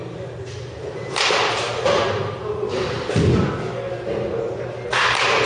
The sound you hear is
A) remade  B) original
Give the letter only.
B